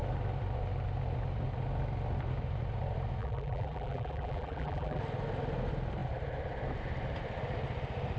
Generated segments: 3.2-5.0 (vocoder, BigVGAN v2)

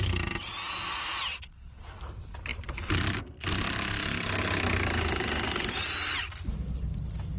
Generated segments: 1.3-1.9 (vocoder, Vocos)

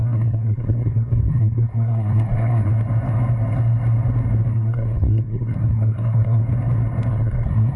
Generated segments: 0.0-2.7 (codec, SNAC); 4.5-6.4; 7.1-7.8

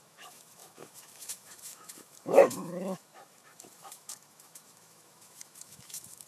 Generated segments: 0.0-6.3 (autoencoder, DAC-VAE)